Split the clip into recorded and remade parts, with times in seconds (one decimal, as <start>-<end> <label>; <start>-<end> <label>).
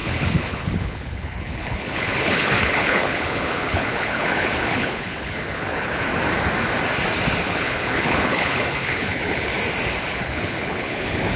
0.0-6.1 remade; 6.1-7.4 recorded; 7.4-9.5 remade; 9.5-10.1 recorded; 10.1-11.4 remade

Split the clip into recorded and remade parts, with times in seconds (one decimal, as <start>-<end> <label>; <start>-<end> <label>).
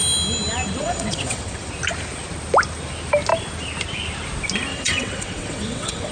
0.0-0.8 recorded; 0.8-1.7 remade; 1.7-4.7 recorded; 4.7-6.1 remade